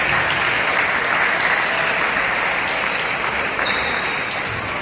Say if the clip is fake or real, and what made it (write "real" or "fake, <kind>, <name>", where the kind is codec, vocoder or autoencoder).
real